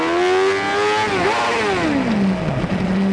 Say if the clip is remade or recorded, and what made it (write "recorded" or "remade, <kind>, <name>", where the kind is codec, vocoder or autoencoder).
recorded